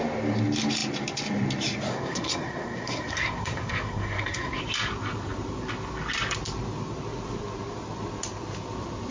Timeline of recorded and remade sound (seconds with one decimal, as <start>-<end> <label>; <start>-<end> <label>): 0.0-1.9 recorded; 1.9-4.6 remade; 4.6-9.1 recorded